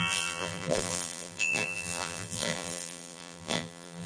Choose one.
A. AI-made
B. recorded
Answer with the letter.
A